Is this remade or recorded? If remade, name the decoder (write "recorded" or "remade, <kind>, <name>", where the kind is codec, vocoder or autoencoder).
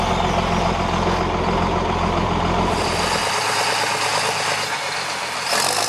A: recorded